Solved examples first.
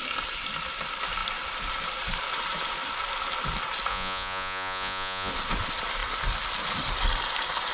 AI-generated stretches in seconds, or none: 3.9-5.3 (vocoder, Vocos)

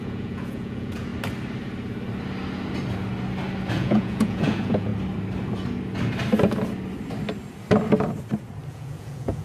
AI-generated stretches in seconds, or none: 0.0-1.1 (vocoder, Vocos); 3.7-4.9; 8.7-9.4

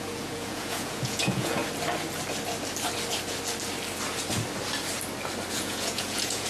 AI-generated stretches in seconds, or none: 0.0-1.6 (vocoder, Vocos); 5.5-6.5

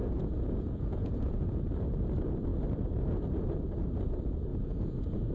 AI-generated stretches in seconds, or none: 0.0-1.6 (vocoder, Vocos); 4.5-5.3

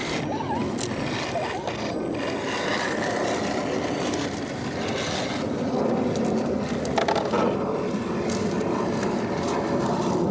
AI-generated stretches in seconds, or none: none

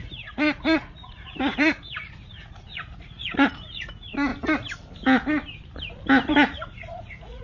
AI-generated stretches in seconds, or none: 0.0-4.3 (vocoder, Vocos); 6.3-7.4

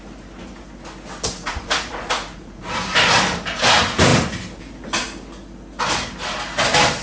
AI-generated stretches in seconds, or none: 1.4-2.6 (vocoder, Vocos)